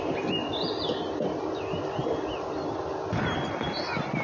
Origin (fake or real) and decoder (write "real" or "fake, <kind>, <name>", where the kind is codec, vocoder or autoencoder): real